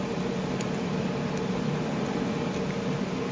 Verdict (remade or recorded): recorded